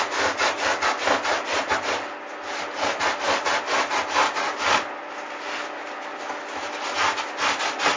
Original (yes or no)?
yes